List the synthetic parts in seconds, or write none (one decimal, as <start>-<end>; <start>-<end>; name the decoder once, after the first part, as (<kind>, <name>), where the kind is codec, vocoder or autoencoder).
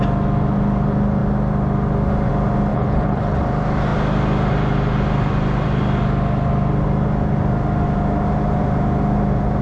2.7-3.4 (codec, HILCodec)